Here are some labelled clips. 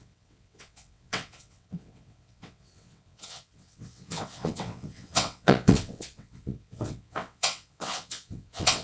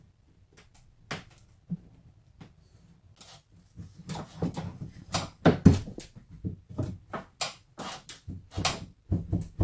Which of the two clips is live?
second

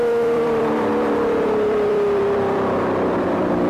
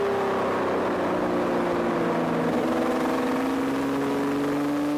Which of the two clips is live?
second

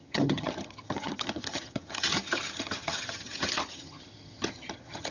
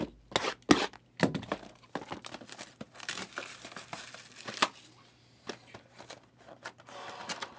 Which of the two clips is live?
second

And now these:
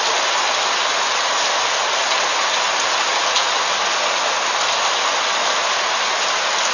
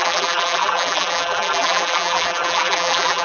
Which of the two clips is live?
first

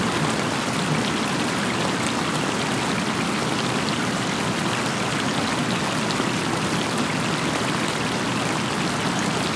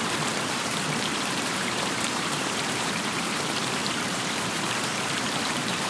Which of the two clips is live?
first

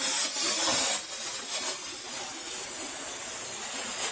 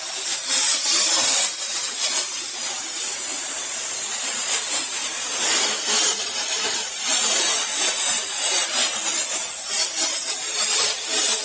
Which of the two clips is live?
first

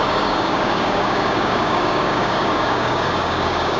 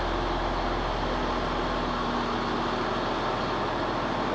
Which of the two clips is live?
second